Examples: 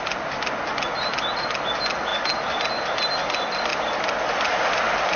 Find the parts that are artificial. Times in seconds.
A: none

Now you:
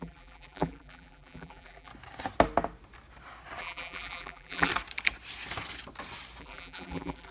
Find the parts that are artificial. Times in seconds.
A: 0.0-1.9 (vocoder, BigVGAN v2); 3.6-4.7; 6.4-7.3

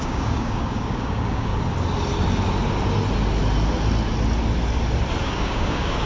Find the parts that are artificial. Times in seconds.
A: 0.0-1.5 (codec, DAC); 5.2-6.1

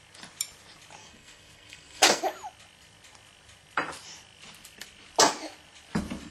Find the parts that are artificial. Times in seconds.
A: 1.0-2.2 (codec, SNAC)

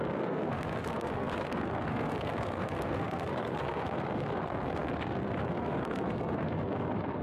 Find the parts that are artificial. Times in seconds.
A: 0.0-7.2 (codec, SNAC)